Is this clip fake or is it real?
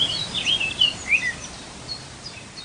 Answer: real